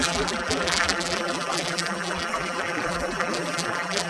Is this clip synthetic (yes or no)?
yes